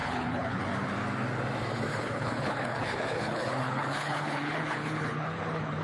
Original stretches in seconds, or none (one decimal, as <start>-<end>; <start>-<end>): 0.6-1.9